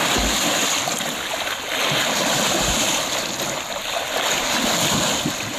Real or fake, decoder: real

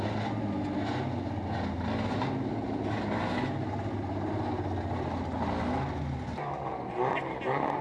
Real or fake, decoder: real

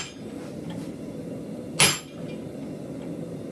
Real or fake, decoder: real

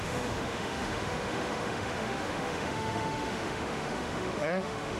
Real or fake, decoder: fake, autoencoder, DAC-VAE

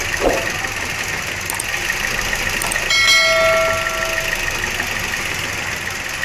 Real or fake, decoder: real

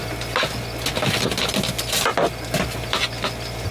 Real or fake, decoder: real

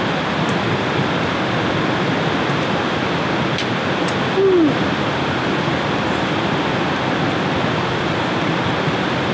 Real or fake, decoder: real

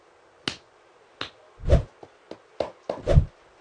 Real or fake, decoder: real